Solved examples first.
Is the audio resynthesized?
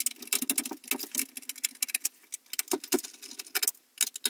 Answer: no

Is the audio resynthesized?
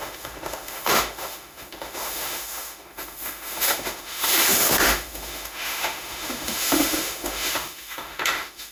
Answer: yes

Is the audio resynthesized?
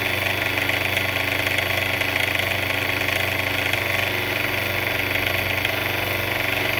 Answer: no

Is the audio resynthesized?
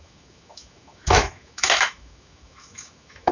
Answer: yes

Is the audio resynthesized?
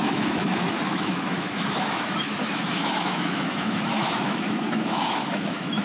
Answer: yes